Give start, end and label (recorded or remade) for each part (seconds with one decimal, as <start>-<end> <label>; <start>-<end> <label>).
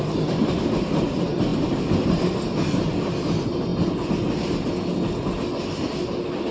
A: 0.0-6.5 recorded